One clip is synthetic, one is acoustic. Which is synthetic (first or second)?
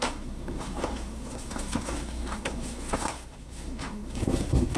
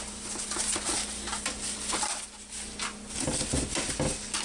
first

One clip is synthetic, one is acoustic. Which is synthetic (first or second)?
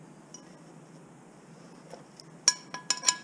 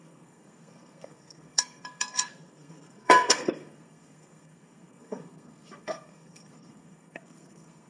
second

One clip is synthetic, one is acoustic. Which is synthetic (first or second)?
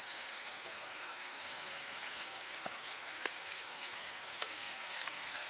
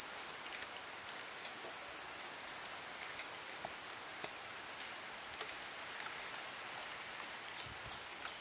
first